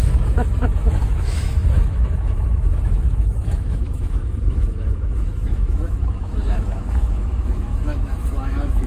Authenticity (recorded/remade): remade